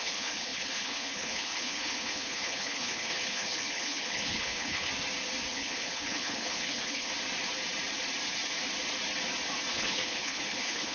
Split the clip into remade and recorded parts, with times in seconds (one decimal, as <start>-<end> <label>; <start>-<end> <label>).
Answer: 0.0-4.9 remade; 4.9-5.5 recorded; 5.5-7.1 remade; 7.1-9.7 recorded; 9.7-10.9 remade